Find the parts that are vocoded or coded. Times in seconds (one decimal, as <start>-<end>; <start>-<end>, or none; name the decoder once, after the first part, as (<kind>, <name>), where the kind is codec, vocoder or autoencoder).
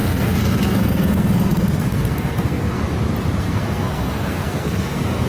0.0-2.8 (codec, SNAC); 3.4-5.3